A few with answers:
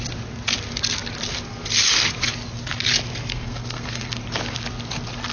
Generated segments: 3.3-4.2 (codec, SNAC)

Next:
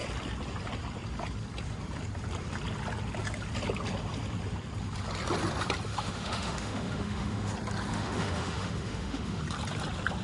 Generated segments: 5.9-7.5 (autoencoder, DAC-VAE); 7.9-9.4

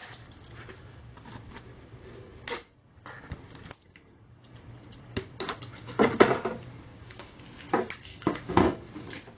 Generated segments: 6.9-7.4 (codec, DAC); 8.1-8.9

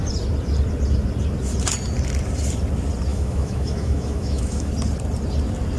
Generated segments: 3.1-4.7 (autoencoder, DAC-VAE)

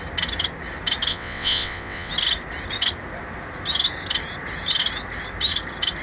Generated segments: 1.1-2.1 (vocoder, WaveNeXt)